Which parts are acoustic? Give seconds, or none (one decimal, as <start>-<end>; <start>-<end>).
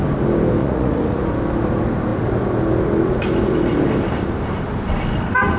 0.0-0.6; 1.2-5.6